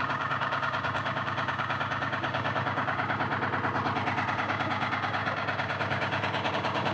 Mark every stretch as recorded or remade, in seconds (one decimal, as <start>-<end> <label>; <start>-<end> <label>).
0.0-3.3 remade; 3.3-4.3 recorded; 4.3-6.9 remade